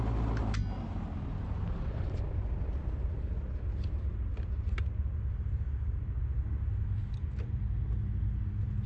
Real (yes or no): yes